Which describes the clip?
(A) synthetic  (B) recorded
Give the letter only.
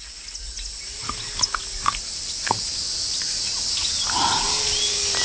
B